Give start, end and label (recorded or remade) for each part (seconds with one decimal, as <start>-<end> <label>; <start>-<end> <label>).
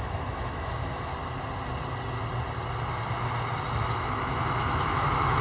0.0-1.1 remade; 1.1-3.8 recorded; 3.8-5.4 remade